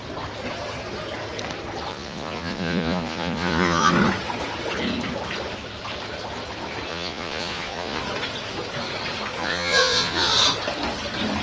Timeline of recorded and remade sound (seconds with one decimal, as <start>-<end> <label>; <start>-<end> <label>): 0.0-1.9 recorded; 1.9-3.9 remade; 3.9-6.9 recorded; 6.9-8.0 remade; 8.0-9.4 recorded; 9.4-10.3 remade; 10.3-11.4 recorded